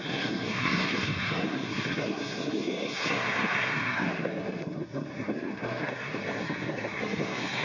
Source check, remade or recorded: remade